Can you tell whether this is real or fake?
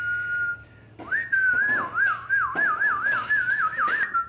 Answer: real